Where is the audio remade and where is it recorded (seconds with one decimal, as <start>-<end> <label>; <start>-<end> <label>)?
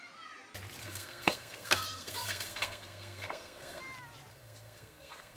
0.0-0.8 recorded; 0.8-3.8 remade; 3.8-4.3 recorded; 4.3-5.4 remade